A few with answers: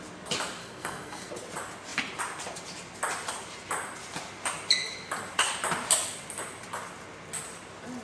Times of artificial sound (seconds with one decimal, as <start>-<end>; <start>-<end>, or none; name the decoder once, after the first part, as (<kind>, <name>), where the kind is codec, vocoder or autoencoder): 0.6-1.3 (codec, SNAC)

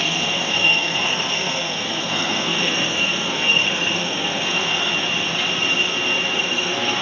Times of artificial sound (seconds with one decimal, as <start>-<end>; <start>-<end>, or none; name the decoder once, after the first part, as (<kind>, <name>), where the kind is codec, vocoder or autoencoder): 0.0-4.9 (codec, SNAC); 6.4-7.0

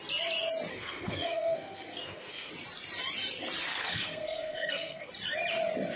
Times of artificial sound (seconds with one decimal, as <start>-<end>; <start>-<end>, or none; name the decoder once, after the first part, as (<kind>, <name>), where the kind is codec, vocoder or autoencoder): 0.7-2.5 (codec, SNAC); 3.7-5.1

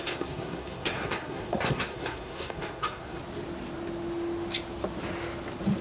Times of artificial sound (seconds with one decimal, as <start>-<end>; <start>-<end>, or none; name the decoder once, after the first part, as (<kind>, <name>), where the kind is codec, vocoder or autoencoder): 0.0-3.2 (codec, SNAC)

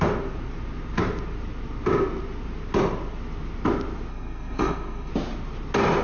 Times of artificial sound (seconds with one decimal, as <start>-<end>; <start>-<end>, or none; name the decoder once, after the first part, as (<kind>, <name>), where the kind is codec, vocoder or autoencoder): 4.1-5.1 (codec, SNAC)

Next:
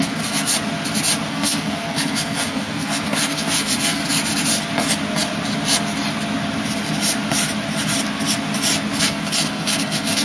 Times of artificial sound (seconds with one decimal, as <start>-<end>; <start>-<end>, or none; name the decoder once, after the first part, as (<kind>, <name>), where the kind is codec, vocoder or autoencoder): 0.0-0.5 (codec, SNAC); 1.3-4.0; 9.0-10.2